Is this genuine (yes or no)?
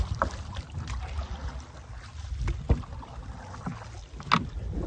yes